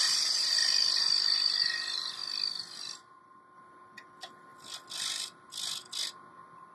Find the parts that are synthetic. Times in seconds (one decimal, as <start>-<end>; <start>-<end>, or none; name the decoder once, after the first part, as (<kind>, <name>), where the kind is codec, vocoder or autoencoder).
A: 0.6-1.2 (vocoder, BigVGAN v2); 2.2-3.4; 4.5-5.5